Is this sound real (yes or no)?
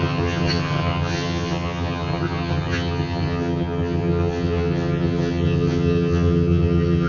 no